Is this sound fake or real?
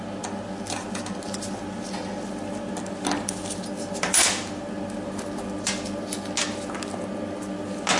real